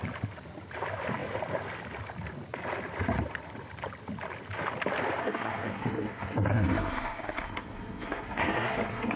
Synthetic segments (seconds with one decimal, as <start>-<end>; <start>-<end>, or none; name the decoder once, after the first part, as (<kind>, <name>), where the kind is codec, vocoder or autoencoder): 5.2-9.2 (codec, SNAC)